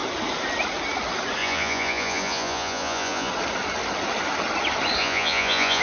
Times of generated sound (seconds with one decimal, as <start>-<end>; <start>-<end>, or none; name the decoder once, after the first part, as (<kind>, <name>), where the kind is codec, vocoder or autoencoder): 1.4-3.3 (vocoder, Vocos); 5.0-5.8